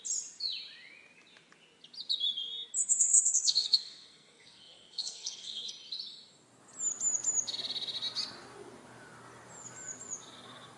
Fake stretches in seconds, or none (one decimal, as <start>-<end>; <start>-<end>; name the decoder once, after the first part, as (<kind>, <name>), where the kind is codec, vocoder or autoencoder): 2.9-5.7 (codec, SNAC)